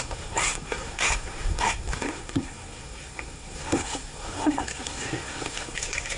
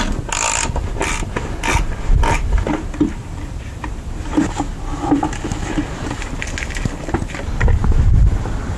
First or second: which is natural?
second